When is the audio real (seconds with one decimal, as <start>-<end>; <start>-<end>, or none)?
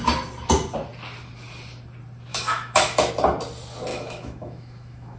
0.0-2.3; 3.1-3.9